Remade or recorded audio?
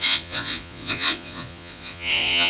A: remade